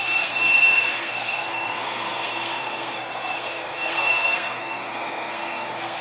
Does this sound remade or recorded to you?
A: remade